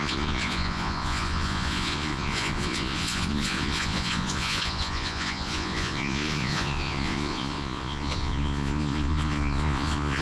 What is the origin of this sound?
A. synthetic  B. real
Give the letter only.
A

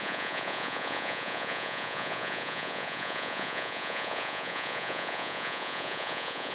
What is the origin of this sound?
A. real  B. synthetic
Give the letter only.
B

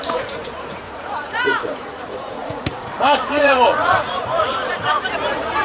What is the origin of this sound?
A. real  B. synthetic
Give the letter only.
B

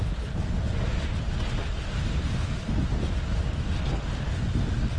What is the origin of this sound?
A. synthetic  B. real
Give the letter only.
B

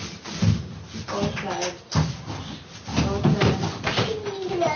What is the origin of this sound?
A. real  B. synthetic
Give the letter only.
A